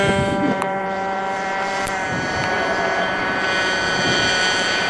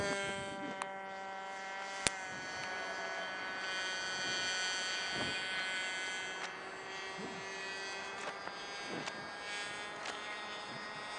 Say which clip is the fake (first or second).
first